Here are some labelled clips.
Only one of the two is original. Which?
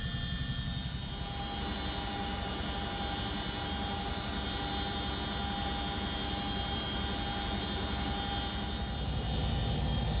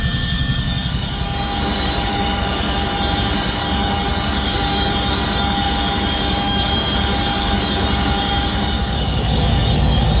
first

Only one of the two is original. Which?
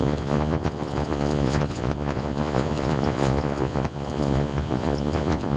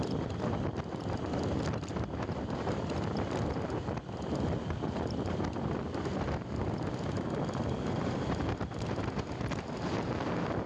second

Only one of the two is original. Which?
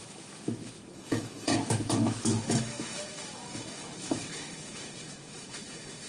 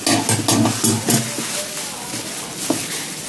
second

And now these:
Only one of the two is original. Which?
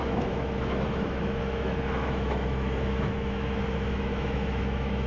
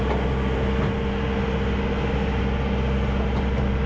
second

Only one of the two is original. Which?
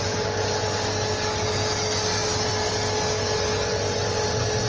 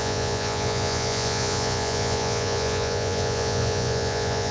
first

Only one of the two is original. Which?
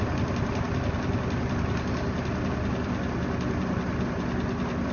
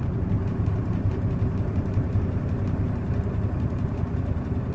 first